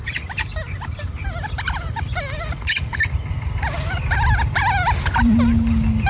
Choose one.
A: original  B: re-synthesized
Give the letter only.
A